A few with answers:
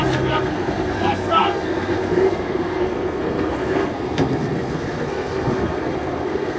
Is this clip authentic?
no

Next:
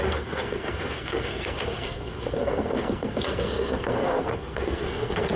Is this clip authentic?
no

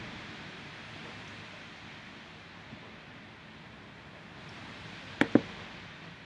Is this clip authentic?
yes